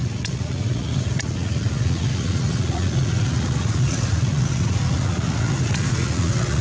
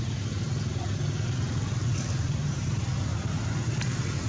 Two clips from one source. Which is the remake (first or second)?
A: first